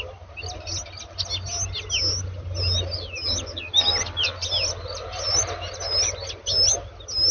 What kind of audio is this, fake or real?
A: real